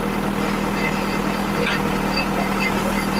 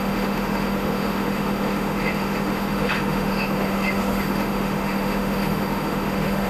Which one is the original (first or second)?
first